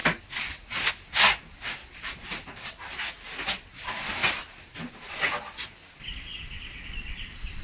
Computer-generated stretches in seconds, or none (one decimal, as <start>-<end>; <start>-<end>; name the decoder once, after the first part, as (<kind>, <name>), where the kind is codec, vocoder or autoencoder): 0.0-0.9 (vocoder, BigVGAN v2); 1.8-2.7